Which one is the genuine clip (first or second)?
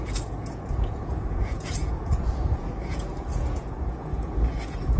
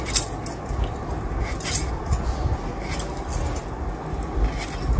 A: second